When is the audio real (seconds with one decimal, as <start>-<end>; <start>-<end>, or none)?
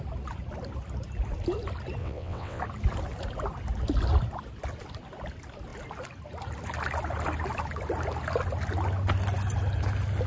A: 0.0-2.0; 2.6-10.3